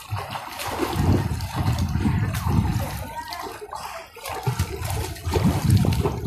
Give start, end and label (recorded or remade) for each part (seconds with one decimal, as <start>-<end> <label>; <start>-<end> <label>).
0.0-6.3 recorded